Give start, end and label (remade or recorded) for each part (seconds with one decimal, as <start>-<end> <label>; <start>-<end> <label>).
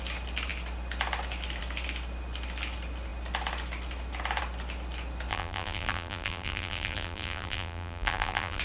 0.0-5.3 recorded; 5.3-8.6 remade